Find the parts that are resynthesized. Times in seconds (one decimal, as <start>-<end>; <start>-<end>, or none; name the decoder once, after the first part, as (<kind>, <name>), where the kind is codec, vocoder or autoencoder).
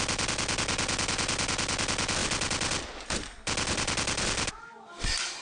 none